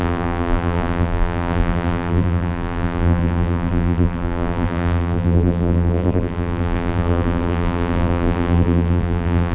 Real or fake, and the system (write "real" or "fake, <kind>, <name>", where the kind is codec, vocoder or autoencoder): fake, vocoder, BigVGAN v2